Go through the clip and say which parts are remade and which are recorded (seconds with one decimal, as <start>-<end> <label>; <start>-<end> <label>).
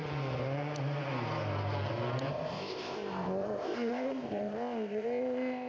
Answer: 0.0-2.3 recorded; 2.3-5.7 remade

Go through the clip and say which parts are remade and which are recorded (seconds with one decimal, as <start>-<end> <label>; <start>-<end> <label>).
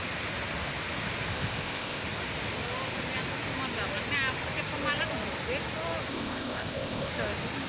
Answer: 0.0-1.3 recorded; 1.3-2.0 remade; 2.0-6.1 recorded; 6.1-7.1 remade; 7.1-7.7 recorded